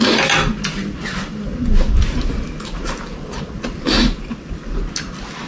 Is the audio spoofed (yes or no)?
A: no